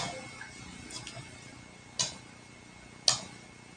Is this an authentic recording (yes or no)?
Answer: yes